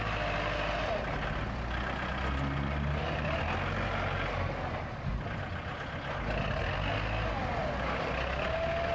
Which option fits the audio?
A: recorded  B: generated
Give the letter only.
A